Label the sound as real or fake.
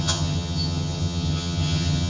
fake